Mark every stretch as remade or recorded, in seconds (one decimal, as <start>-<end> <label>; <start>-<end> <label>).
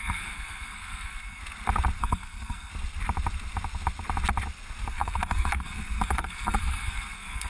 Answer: 0.0-1.4 remade; 1.4-2.0 recorded; 2.0-2.7 remade; 2.7-4.9 recorded; 4.9-7.5 remade